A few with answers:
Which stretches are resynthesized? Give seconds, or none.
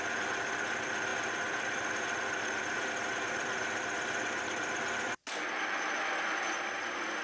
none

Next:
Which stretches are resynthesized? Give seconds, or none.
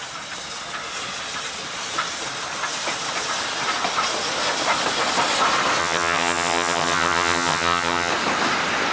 5.8-8.1 (vocoder, HiFi-GAN)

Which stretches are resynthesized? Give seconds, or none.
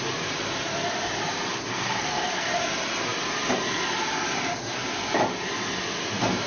1.7-2.5 (codec, SNAC)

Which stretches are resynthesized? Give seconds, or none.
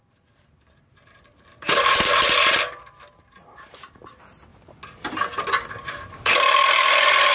0.0-4.5 (vocoder, BigVGAN v2); 5.7-7.3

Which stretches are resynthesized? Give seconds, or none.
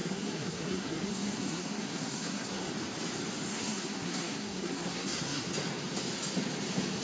0.0-2.7 (codec, SNAC); 3.5-5.5